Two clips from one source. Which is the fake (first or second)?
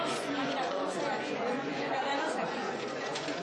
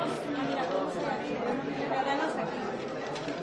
first